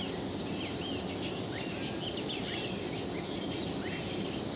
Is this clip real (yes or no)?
yes